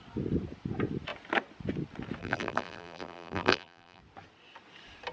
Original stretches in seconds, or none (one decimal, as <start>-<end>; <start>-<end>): 0.0-2.2; 4.0-5.1